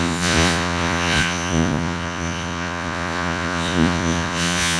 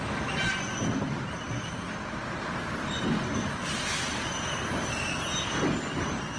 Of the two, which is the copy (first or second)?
first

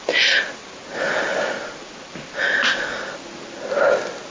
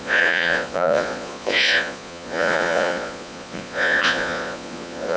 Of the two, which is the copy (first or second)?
second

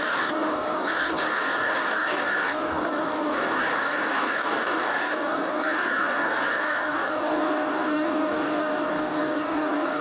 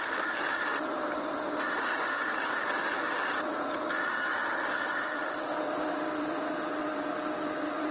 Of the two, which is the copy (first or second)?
first